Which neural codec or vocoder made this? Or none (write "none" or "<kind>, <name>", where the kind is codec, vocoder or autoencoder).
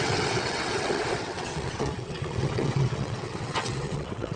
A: vocoder, WaveNeXt